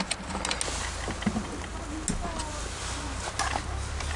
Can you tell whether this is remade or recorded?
recorded